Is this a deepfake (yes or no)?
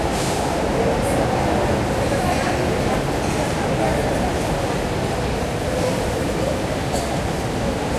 no